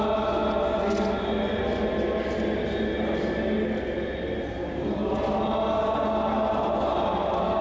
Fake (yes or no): no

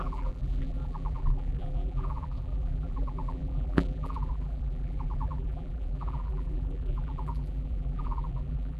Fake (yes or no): yes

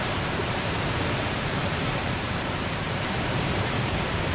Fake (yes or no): yes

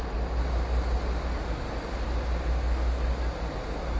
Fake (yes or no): no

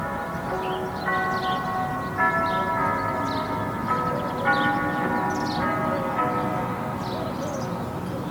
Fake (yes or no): no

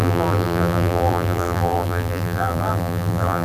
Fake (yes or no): yes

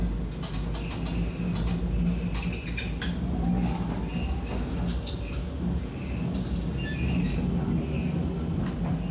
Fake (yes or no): no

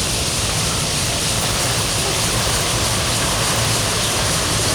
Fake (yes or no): no